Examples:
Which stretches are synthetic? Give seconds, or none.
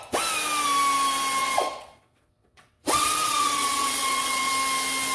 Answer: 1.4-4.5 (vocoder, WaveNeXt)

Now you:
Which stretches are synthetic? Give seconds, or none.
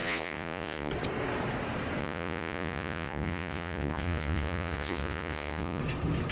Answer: 0.0-0.9 (vocoder, Vocos); 2.0-5.8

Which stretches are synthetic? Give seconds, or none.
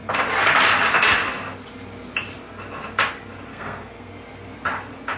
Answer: 3.5-4.1 (codec, SNAC)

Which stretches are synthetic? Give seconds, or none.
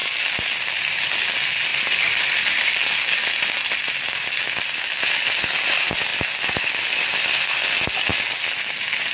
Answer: 1.7-3.5 (vocoder, BigVGAN v2); 6.1-7.2